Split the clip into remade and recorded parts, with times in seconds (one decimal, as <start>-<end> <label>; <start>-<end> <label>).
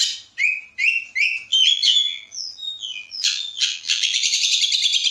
0.0-1.5 recorded; 1.5-4.6 remade; 4.6-5.1 recorded